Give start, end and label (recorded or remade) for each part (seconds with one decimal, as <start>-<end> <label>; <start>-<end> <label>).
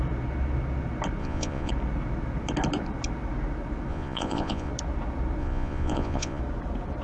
0.0-1.2 recorded; 1.2-1.7 remade; 1.7-3.9 recorded; 3.9-4.7 remade; 4.7-5.4 recorded; 5.4-6.4 remade; 6.4-7.0 recorded